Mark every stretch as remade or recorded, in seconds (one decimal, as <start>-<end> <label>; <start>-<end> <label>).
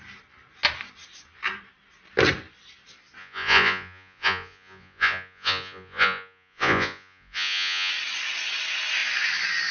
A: 0.0-3.2 recorded; 3.2-7.9 remade; 7.9-9.7 recorded